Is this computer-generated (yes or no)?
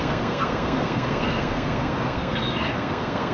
yes